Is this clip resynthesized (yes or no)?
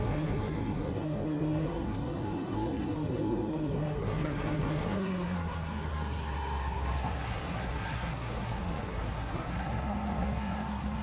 yes